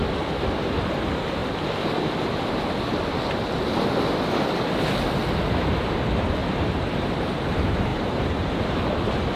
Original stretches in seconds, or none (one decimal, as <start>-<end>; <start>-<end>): 0.0-6.4; 7.5-7.9; 8.8-9.4